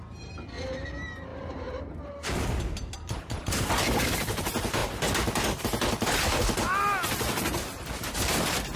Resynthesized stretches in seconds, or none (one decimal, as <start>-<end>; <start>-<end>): 1.3-3.7